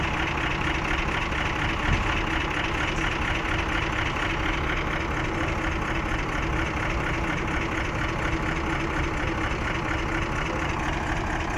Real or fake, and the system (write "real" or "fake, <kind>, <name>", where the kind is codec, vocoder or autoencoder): real